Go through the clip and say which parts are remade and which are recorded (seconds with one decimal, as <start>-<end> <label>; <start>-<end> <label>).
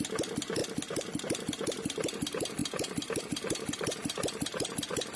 0.0-5.2 recorded